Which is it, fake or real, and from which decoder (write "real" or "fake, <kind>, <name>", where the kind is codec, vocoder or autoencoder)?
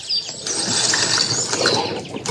real